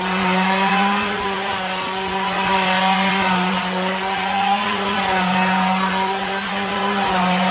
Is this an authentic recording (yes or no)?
no